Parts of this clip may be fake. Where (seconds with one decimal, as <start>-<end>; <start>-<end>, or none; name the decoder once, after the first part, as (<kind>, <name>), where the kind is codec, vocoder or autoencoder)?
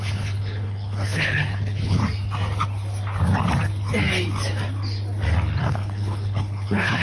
0.0-2.0 (codec, HILCodec); 5.6-7.0